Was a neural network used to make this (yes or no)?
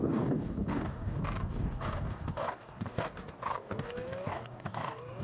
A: yes